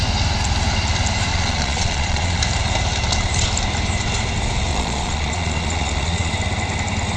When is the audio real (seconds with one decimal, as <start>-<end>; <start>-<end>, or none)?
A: 0.0-1.3; 2.4-4.7; 6.3-7.2